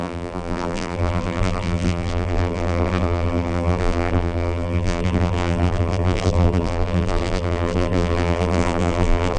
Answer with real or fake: fake